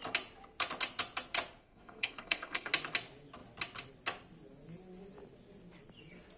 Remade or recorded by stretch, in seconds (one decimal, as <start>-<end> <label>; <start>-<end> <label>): 0.0-1.6 recorded; 1.6-2.7 remade; 2.7-6.4 recorded